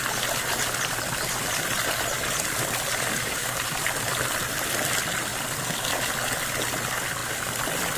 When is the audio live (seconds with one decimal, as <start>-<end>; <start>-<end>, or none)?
0.0-3.1; 3.6-8.0